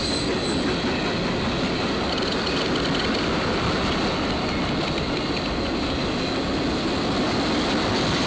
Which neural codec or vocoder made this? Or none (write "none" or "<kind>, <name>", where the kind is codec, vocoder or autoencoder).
none